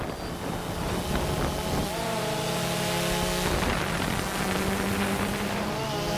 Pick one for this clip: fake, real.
real